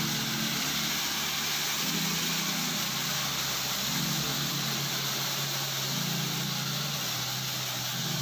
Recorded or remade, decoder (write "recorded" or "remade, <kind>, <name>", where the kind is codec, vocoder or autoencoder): recorded